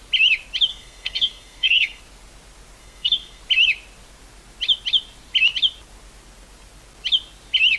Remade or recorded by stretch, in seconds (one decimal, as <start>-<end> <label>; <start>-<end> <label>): 0.0-0.7 recorded; 0.7-2.0 remade; 2.0-2.8 recorded; 2.8-3.4 remade; 3.4-7.8 recorded